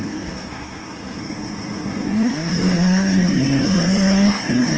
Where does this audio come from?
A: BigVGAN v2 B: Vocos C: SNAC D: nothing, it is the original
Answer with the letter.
C